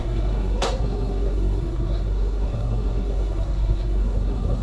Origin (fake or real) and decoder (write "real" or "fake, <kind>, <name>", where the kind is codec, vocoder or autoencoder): fake, codec, SNAC